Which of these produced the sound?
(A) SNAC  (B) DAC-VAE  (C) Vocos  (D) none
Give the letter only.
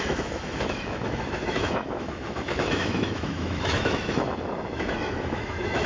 B